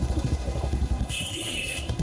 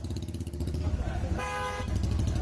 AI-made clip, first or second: first